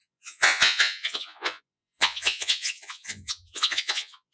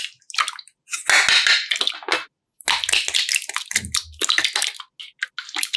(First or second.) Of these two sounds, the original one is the second